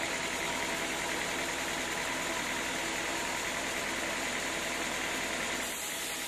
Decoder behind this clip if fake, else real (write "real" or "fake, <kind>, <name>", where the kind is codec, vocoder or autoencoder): real